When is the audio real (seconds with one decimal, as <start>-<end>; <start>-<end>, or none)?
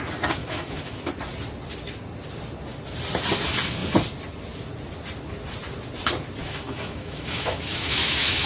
0.0-0.4; 1.1-6.4